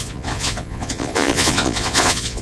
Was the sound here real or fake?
fake